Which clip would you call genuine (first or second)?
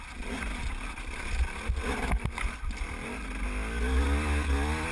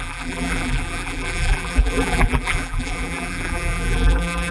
first